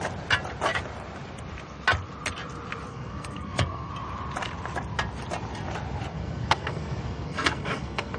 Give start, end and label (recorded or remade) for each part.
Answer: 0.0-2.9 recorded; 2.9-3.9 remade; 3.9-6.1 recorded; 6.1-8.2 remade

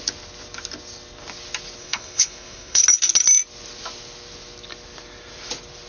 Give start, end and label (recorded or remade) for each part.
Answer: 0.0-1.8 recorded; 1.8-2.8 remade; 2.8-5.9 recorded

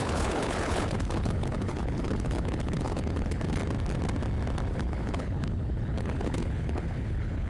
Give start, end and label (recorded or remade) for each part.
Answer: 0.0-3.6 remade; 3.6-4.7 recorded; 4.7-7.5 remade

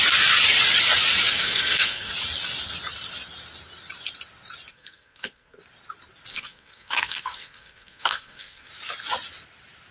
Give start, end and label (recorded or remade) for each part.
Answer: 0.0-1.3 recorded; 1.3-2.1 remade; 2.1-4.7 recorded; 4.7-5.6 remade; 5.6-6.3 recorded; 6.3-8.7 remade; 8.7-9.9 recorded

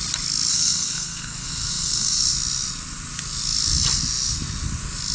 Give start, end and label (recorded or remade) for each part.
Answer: 0.0-0.5 recorded; 0.5-2.2 remade; 2.2-5.1 recorded